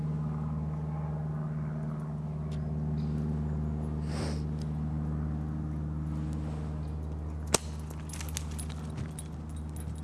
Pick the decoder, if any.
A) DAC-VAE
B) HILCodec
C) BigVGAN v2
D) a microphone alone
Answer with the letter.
D